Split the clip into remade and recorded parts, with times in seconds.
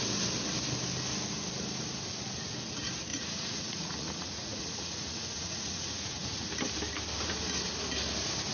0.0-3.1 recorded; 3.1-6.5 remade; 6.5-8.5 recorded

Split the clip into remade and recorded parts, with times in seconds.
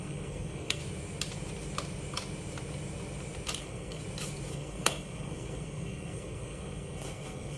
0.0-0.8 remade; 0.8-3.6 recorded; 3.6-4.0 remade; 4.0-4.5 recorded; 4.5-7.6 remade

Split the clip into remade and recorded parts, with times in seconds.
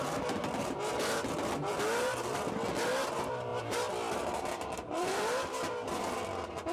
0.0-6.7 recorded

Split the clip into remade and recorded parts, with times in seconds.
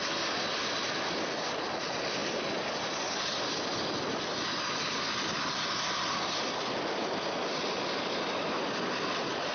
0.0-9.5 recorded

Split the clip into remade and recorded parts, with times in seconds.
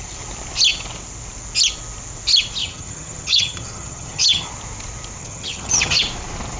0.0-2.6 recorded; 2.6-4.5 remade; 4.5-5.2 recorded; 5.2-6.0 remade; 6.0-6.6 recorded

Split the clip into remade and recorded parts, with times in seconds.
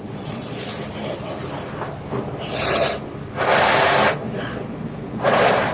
0.0-0.7 remade; 0.7-4.1 recorded; 4.1-5.7 remade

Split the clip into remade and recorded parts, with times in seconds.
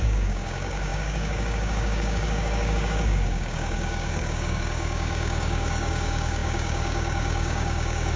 0.0-8.2 remade